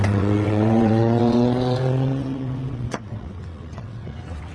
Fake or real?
fake